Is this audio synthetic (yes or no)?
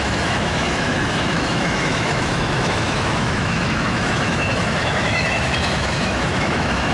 yes